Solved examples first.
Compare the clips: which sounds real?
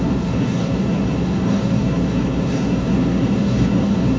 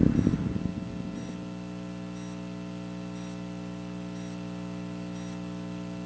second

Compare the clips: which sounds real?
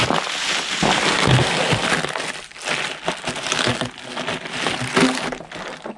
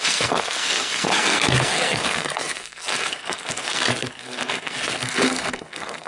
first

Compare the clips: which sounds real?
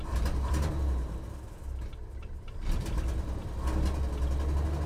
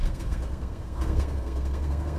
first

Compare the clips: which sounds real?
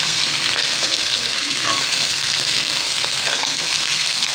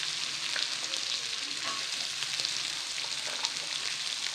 second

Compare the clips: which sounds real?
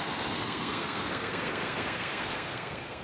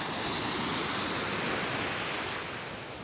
second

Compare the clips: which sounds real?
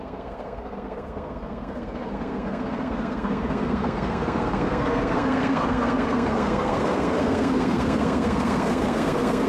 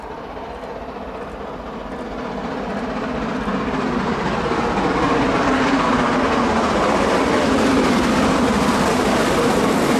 second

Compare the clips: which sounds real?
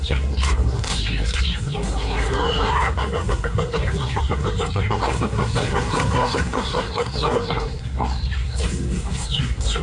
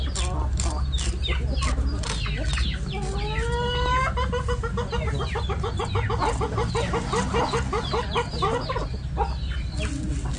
second